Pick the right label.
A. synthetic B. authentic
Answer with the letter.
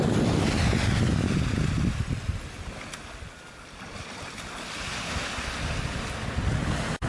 B